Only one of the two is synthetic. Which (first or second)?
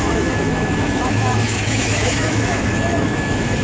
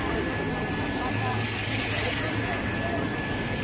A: first